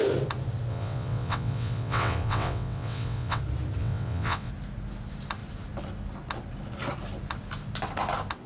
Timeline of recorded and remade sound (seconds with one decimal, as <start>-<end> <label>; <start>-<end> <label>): 0.0-0.7 recorded; 0.7-3.4 remade; 3.4-3.8 recorded; 3.8-4.5 remade; 4.5-8.5 recorded